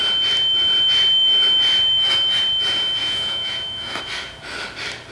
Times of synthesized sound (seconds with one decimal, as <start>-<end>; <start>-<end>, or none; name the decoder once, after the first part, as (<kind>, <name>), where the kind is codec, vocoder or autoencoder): 3.0-4.0 (autoencoder, DAC-VAE)